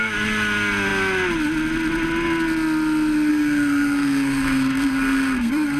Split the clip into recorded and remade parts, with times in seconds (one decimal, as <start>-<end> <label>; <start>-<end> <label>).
0.0-3.3 recorded; 3.3-5.8 remade